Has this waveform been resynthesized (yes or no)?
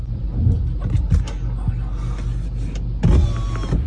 no